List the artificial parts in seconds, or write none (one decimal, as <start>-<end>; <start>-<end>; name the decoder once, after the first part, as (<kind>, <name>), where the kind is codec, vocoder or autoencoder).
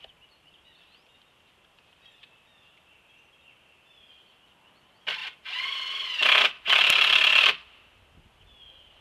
none